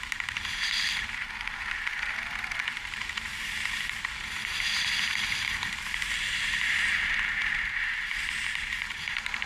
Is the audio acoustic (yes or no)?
no